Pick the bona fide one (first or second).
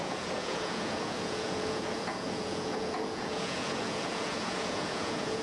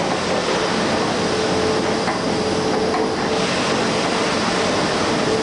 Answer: second